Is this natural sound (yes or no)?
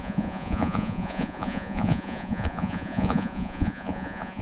no